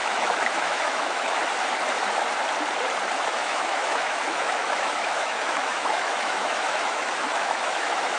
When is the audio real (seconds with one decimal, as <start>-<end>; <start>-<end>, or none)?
1.4-3.3